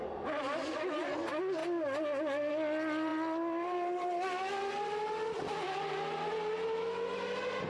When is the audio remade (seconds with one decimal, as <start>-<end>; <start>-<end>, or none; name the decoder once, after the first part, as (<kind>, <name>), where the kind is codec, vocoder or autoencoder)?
none